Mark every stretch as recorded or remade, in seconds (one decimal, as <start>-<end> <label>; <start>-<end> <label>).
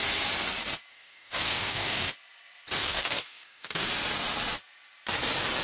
0.0-0.9 recorded; 0.9-2.1 remade; 2.1-2.8 recorded; 2.8-3.9 remade; 3.9-5.6 recorded